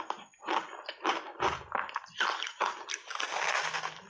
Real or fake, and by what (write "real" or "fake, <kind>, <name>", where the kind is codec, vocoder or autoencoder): real